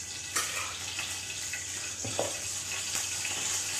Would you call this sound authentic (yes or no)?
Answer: yes